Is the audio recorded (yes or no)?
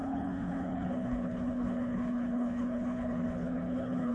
no